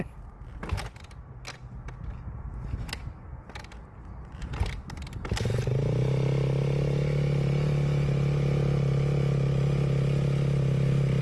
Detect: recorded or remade recorded